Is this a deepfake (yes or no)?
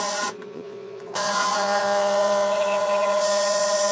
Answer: yes